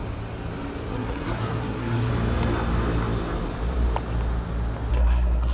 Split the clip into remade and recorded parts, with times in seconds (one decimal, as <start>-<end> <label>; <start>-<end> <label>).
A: 0.0-0.9 recorded; 0.9-2.1 remade; 2.1-4.9 recorded; 4.9-5.5 remade